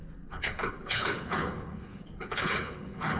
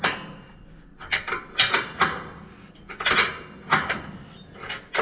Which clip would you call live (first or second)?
second